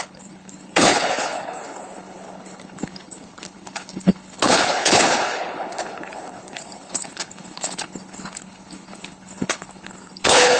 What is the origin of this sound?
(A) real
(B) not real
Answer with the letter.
B